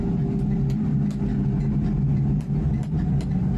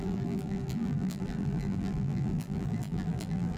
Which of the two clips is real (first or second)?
first